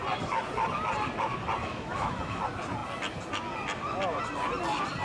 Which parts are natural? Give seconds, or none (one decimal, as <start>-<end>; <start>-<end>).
0.0-1.6; 2.4-5.0